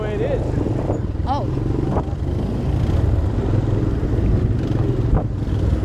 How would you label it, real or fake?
real